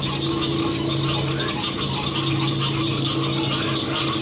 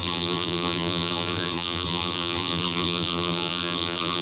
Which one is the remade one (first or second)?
second